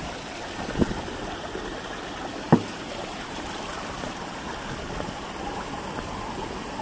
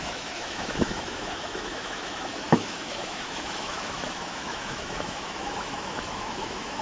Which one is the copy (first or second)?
second